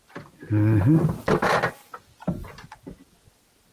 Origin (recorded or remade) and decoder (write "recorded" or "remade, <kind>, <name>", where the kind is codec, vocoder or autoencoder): recorded